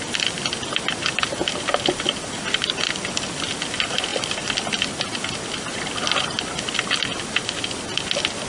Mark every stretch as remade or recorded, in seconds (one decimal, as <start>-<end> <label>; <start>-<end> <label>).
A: 0.0-8.5 recorded